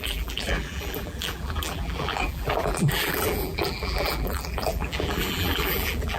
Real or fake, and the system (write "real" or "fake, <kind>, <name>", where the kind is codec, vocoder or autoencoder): fake, vocoder, BigVGAN v2